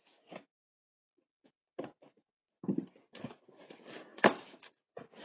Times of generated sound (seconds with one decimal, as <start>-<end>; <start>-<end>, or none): 0.0-1.3; 3.3-5.2